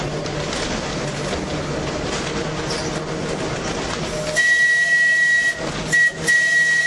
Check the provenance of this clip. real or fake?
real